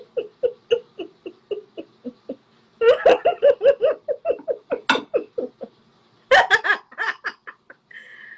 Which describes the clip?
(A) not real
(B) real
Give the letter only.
B